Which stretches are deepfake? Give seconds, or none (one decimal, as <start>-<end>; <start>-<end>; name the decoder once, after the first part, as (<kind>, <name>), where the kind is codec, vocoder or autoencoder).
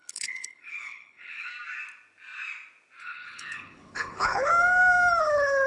0.0-1.5 (codec, HILCodec); 3.0-4.5; 5.2-5.7